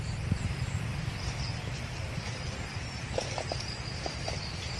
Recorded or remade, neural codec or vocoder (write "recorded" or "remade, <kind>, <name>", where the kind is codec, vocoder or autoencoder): remade, vocoder, BigVGAN v2